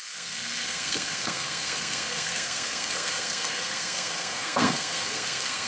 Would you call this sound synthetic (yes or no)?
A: yes